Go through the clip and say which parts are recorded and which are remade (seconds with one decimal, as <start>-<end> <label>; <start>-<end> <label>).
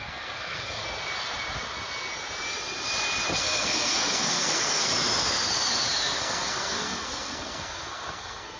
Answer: 0.0-0.8 remade; 0.8-3.4 recorded; 3.4-4.9 remade; 4.9-6.2 recorded; 6.2-8.6 remade